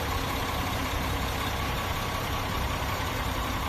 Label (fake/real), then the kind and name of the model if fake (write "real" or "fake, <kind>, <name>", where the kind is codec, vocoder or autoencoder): fake, vocoder, BigVGAN v2